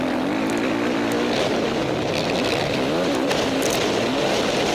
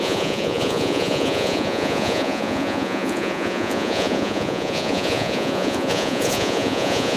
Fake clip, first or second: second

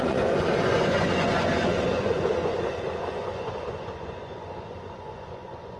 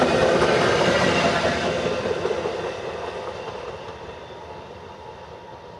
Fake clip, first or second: first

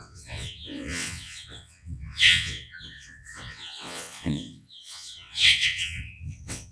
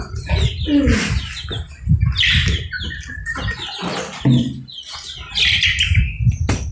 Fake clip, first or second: first